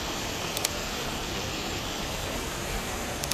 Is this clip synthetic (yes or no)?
yes